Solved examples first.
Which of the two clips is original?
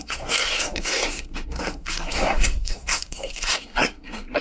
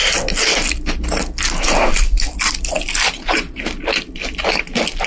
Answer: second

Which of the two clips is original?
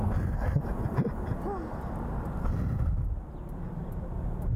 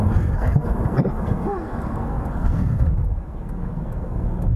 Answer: first